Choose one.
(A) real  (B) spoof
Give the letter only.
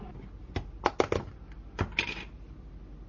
A